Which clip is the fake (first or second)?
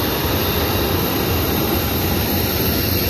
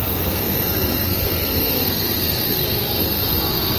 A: second